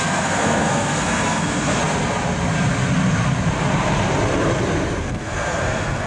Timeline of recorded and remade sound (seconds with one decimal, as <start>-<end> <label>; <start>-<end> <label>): 0.0-1.8 remade; 1.8-5.0 recorded; 5.0-6.1 remade